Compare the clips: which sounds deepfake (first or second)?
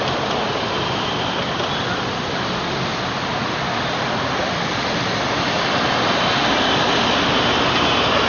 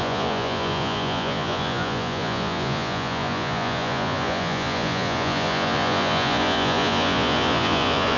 second